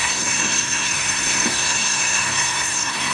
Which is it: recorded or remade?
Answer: remade